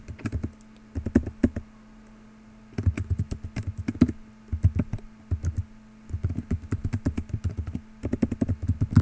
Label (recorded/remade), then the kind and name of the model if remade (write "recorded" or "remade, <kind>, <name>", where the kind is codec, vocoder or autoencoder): recorded